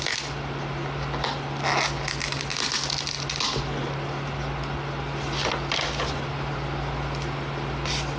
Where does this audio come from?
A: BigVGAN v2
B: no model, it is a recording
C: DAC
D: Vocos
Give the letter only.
B